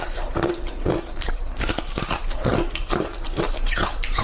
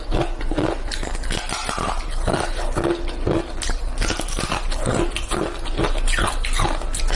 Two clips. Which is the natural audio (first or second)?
second